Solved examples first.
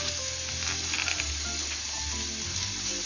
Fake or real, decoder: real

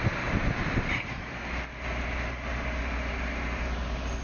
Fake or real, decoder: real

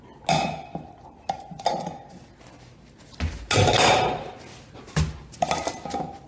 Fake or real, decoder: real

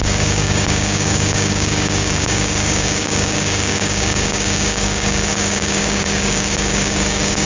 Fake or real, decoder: fake, codec, DAC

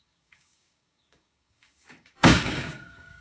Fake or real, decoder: fake, codec, DAC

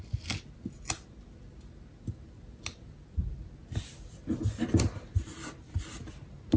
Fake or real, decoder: real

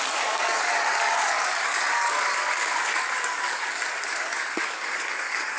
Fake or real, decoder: fake, codec, DAC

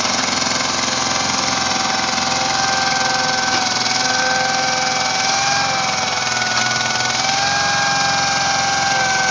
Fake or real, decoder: real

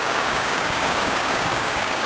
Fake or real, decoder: fake, codec, DAC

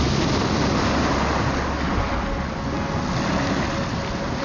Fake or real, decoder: real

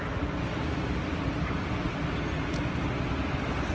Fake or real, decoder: real